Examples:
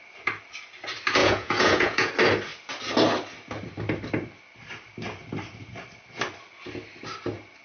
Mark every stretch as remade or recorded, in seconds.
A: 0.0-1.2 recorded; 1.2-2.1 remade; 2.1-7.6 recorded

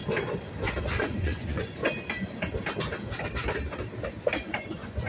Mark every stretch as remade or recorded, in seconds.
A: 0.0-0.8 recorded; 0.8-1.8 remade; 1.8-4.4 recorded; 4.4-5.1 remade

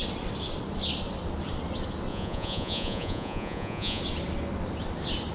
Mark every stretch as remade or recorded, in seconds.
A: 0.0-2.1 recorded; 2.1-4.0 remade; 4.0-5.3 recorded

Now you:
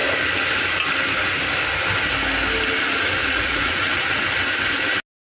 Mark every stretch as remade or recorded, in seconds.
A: 0.0-3.2 recorded; 3.2-4.2 remade; 4.2-5.4 recorded

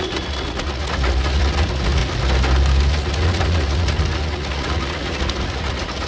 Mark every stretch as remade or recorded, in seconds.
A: 0.0-2.0 remade; 2.0-2.9 recorded; 2.9-6.1 remade